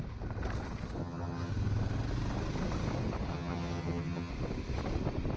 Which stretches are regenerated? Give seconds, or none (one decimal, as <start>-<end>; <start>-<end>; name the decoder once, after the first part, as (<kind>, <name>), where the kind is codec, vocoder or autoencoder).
1.0-1.5 (vocoder, HiFi-GAN); 3.3-4.3